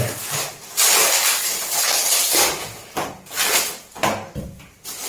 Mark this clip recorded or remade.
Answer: recorded